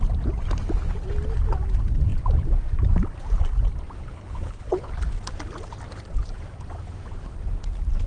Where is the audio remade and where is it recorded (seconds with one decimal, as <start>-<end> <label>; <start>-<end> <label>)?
0.0-4.0 recorded; 4.0-4.9 remade; 4.9-8.1 recorded